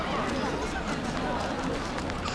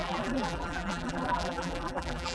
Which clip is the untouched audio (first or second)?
first